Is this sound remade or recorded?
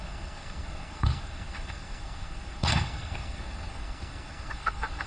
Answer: remade